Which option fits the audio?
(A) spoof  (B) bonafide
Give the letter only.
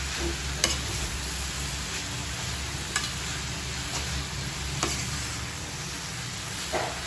B